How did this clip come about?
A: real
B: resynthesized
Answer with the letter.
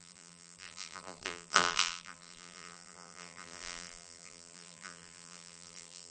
B